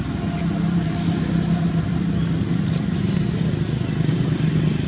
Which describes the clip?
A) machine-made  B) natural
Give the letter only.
A